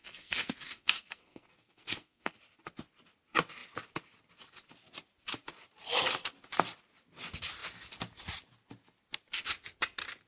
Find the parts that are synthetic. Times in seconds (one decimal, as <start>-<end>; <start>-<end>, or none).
0.0-2.3